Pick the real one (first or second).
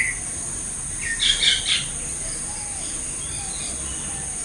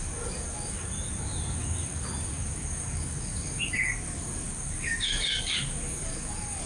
first